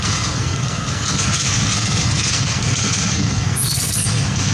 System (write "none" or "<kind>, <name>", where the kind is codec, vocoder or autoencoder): codec, SNAC